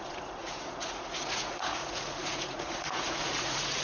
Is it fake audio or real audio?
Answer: fake